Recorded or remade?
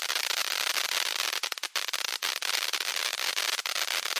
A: recorded